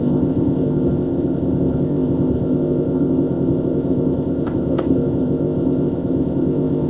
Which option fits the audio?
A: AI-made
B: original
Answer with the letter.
A